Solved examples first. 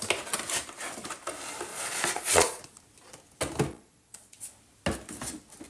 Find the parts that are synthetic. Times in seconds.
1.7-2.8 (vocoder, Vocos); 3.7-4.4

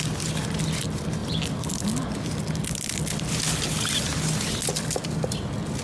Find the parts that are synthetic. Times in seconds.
none

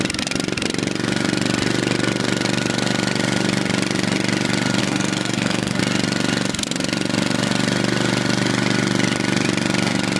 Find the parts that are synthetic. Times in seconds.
4.8-5.8 (codec, SNAC)

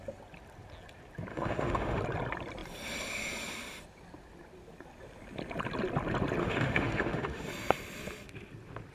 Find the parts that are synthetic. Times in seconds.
1.3-2.0 (autoencoder, DAC-VAE); 6.4-7.5

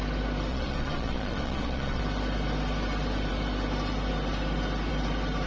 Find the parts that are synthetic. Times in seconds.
0.5-2.0 (vocoder, Vocos)